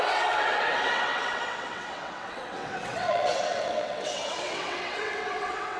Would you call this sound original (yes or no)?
no